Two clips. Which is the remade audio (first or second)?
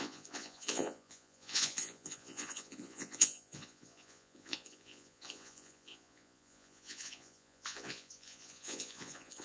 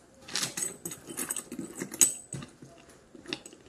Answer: first